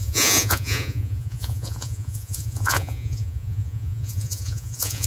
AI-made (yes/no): yes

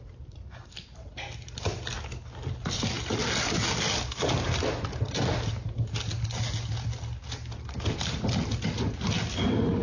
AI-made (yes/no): no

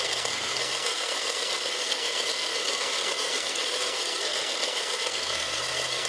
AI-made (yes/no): yes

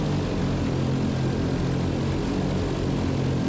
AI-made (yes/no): no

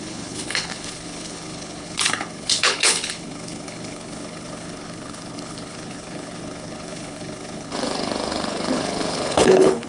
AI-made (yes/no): yes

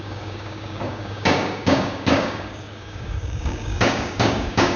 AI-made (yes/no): yes